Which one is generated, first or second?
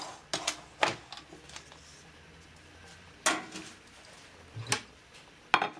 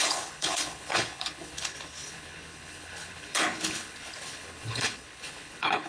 second